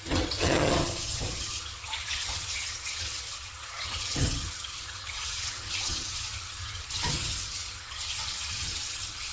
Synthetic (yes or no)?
yes